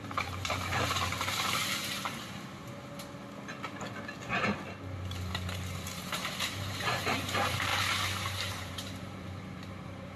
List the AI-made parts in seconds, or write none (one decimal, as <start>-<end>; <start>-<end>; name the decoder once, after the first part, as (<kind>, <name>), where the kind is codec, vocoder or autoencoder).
0.0-1.6 (vocoder, BigVGAN v2); 5.3-7.7; 8.5-10.2

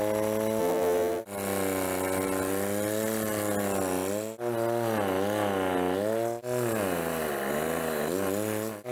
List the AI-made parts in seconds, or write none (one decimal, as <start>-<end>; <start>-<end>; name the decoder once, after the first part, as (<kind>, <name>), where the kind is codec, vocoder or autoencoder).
0.6-1.2 (vocoder, BigVGAN v2)

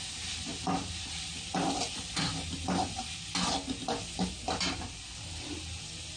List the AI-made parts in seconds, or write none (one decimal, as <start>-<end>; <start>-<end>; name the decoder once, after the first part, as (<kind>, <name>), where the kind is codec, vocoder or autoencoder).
none

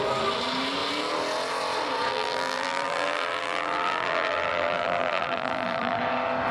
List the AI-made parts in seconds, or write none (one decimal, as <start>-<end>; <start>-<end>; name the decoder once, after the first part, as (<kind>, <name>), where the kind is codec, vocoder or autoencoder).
2.1-6.0 (vocoder, BigVGAN v2)

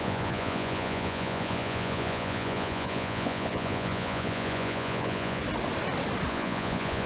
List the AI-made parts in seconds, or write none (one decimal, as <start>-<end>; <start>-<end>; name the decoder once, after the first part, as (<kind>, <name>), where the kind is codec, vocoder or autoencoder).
0.0-5.4 (vocoder, Vocos); 6.3-7.1